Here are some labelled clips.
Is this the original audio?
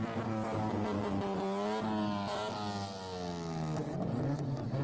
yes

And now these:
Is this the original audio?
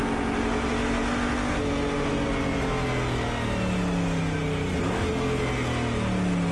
yes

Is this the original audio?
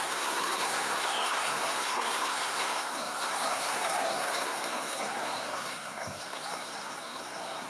no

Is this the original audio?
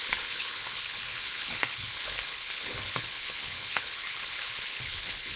no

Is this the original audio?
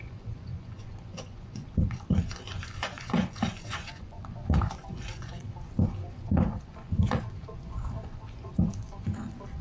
no